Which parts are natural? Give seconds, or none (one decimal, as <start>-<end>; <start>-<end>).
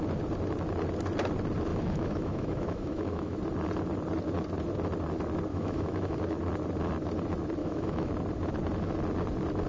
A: 0.0-1.7; 3.4-5.5; 6.2-7.6; 8.1-9.7